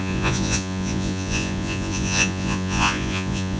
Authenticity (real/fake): fake